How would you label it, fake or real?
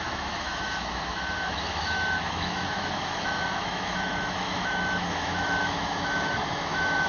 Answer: fake